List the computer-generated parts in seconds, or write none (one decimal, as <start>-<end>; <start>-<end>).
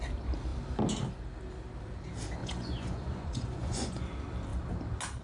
2.4-4.1